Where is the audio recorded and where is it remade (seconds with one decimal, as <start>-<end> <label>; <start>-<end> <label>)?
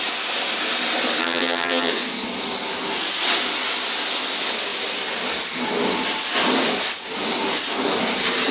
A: 0.0-1.2 recorded; 1.2-1.9 remade; 1.9-8.5 recorded